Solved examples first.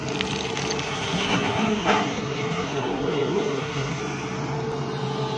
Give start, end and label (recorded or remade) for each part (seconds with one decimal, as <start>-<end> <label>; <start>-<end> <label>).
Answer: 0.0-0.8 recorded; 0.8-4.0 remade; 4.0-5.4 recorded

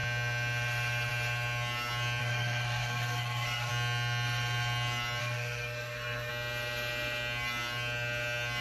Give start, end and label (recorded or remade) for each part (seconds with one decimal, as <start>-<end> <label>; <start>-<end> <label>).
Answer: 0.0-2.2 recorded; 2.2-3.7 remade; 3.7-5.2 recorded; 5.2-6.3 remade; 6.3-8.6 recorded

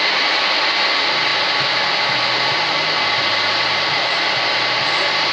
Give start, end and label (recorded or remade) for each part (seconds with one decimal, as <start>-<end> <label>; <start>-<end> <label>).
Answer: 0.0-5.3 recorded